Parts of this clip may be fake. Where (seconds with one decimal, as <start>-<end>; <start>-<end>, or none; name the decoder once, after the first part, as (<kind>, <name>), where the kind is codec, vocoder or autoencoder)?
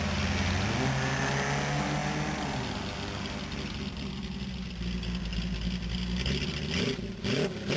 none